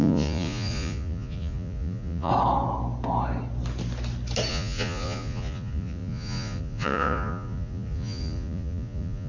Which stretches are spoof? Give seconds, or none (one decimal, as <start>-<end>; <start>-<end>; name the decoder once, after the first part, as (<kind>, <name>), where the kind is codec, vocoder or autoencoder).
0.0-2.3 (vocoder, Vocos); 4.5-9.3